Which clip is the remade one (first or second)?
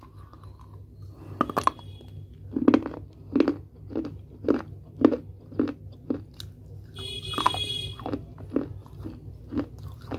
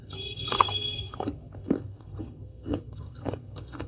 second